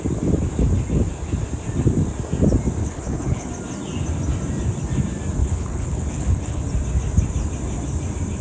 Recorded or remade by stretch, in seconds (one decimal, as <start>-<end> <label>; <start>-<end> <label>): 0.0-2.8 recorded; 2.8-3.5 remade; 3.5-5.4 recorded; 5.4-6.6 remade; 6.6-8.4 recorded